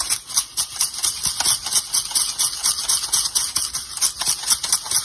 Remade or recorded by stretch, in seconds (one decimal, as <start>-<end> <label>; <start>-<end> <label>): 0.0-5.0 recorded